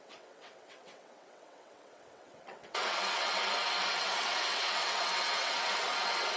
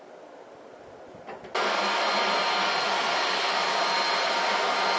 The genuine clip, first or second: second